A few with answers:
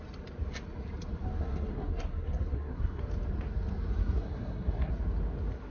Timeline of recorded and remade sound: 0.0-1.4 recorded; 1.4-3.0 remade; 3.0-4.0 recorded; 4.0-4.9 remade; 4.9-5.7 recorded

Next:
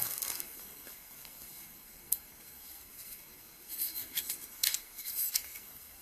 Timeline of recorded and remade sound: 0.0-6.0 remade

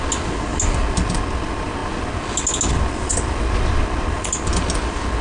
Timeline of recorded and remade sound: 0.0-5.2 recorded